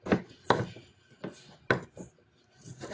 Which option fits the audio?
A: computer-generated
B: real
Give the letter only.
B